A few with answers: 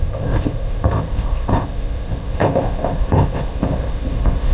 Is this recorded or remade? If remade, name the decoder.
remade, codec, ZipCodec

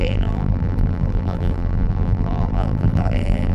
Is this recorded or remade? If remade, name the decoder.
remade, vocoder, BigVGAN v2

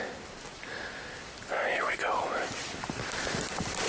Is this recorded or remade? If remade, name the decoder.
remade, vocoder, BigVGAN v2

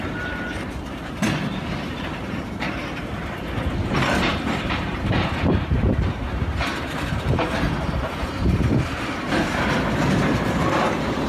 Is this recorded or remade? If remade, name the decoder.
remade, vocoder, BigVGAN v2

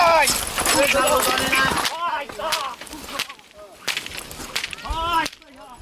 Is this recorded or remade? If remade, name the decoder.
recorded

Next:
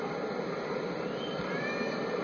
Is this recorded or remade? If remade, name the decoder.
recorded